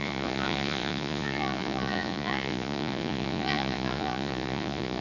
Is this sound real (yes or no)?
no